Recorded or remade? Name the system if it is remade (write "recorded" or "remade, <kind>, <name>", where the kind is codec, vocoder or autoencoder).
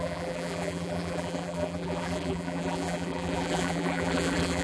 remade, vocoder, BigVGAN v2